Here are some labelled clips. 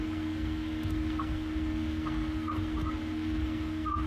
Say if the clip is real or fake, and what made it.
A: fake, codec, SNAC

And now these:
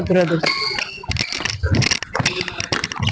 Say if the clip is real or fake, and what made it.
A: real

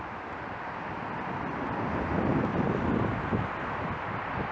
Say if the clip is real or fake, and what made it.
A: real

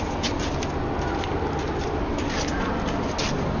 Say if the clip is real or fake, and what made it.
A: real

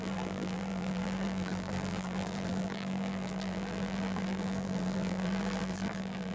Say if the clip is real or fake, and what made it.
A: fake, vocoder, BigVGAN v2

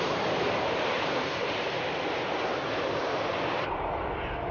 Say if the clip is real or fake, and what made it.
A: fake, vocoder, BigVGAN v2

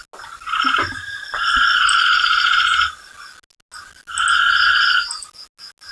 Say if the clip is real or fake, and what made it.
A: real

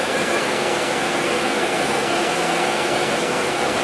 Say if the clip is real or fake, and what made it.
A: fake, codec, SNAC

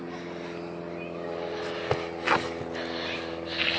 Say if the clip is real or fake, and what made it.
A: real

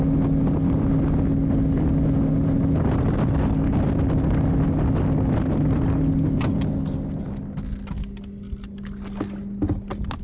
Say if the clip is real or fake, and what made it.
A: real